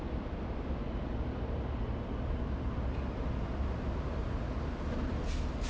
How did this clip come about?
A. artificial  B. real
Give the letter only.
B